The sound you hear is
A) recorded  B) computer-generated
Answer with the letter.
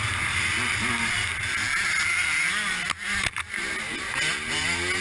A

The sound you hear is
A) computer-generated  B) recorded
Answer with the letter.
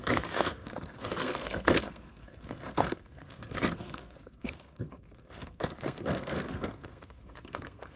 A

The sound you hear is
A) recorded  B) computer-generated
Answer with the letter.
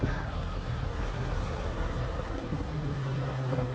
B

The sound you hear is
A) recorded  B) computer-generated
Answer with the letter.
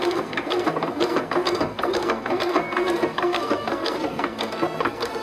B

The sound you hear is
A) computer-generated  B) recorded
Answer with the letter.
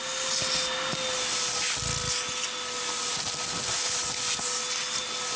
B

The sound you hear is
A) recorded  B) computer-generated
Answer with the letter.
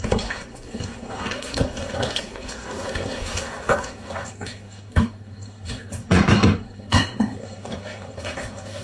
B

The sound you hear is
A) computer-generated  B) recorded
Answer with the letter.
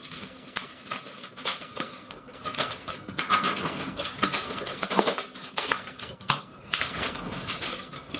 A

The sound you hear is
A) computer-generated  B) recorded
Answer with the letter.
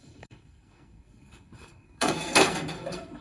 A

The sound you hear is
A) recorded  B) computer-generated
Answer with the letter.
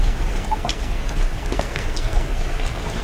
B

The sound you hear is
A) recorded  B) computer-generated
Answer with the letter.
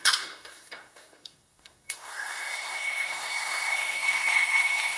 B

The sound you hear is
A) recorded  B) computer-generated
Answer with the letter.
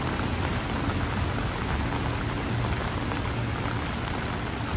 A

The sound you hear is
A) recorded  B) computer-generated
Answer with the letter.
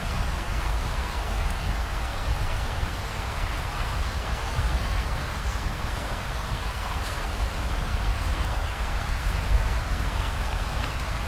B